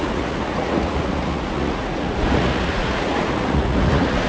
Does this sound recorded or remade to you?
remade